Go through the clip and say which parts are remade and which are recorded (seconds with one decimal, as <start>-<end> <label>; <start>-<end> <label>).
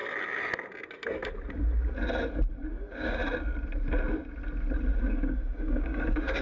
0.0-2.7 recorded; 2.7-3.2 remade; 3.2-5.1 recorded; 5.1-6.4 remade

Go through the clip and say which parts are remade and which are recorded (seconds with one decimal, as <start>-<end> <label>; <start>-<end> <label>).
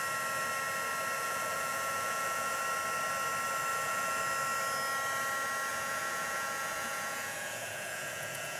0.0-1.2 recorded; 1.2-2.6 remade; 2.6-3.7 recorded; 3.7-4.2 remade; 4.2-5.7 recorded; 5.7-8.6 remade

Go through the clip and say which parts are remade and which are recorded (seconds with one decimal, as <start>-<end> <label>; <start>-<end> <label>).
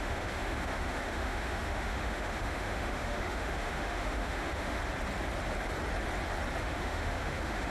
0.0-4.8 remade; 4.8-6.6 recorded; 6.6-7.7 remade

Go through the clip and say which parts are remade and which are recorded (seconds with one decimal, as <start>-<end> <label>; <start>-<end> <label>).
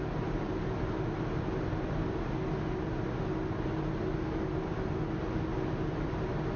0.0-6.6 recorded